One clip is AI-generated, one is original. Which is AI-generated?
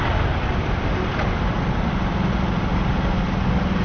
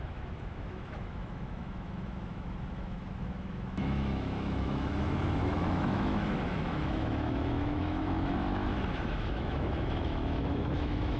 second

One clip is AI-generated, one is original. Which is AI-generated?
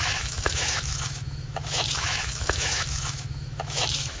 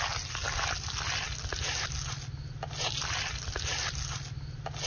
first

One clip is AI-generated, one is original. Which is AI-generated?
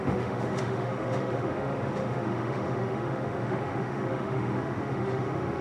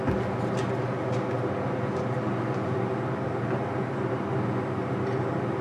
first